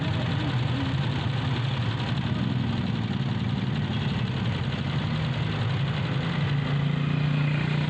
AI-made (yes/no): no